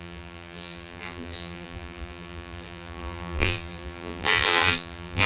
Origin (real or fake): fake